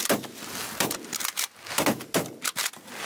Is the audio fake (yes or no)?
no